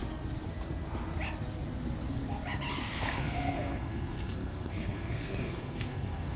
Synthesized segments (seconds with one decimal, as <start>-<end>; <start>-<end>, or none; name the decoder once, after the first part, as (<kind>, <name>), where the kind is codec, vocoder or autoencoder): 2.8-6.4 (codec, SNAC)